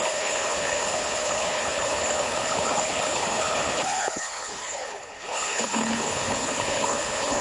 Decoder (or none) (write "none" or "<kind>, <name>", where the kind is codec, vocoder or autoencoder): codec, HILCodec